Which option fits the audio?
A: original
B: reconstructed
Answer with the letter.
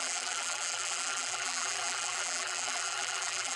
B